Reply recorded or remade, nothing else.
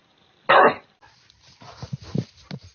recorded